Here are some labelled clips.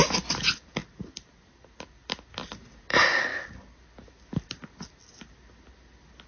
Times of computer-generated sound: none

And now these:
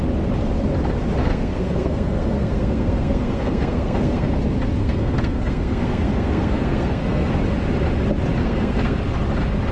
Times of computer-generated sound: 1.2-4.3 (codec, SNAC); 4.8-7.3; 8.4-9.0

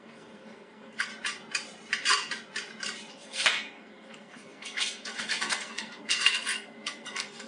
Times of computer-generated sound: 0.0-1.1 (codec, SNAC); 3.1-7.5